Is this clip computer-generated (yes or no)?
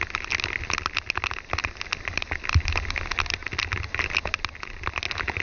no